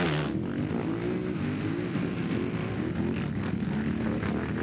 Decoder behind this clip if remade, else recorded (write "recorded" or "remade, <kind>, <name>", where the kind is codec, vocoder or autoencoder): recorded